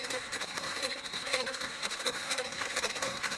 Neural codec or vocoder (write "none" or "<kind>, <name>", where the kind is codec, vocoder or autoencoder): codec, SNAC